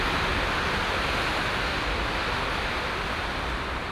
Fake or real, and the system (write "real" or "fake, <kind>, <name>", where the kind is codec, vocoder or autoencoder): real